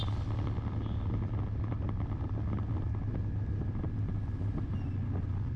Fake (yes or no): no